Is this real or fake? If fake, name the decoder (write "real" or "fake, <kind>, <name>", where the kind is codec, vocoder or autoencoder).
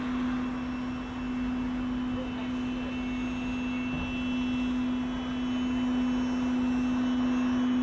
real